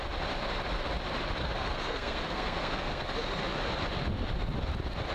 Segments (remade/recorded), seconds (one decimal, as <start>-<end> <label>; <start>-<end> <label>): 0.0-1.4 recorded; 1.4-3.1 remade; 3.1-5.1 recorded